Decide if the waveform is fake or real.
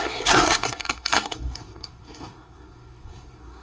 fake